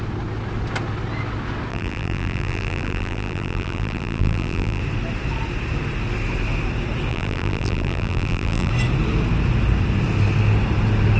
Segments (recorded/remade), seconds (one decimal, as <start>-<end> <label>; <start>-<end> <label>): 0.0-1.7 recorded; 1.7-4.8 remade; 4.8-7.1 recorded; 7.1-8.7 remade; 8.7-11.2 recorded

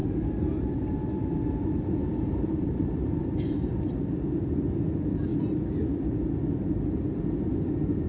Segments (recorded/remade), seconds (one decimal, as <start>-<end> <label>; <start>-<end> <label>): 0.0-0.9 remade; 0.9-2.0 recorded; 2.0-3.4 remade; 3.4-8.1 recorded

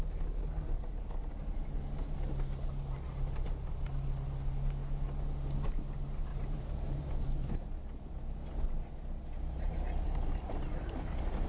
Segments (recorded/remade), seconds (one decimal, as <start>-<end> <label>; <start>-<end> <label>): 0.0-6.3 recorded; 6.3-7.0 remade; 7.0-11.5 recorded

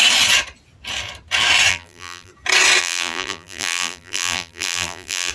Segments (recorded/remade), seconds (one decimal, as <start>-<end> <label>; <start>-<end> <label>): 0.0-1.7 recorded; 1.7-2.3 remade; 2.3-2.8 recorded; 2.8-5.3 remade